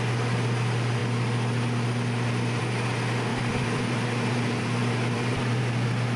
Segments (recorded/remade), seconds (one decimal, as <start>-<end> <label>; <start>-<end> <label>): 0.0-3.3 recorded; 3.3-5.6 remade; 5.6-6.2 recorded